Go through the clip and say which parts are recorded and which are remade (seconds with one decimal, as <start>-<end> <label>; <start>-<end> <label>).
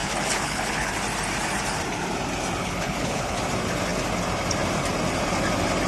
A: 0.0-0.9 remade; 0.9-2.6 recorded; 2.6-3.4 remade; 3.4-5.9 recorded